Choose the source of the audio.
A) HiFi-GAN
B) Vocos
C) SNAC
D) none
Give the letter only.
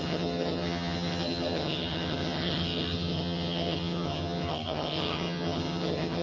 A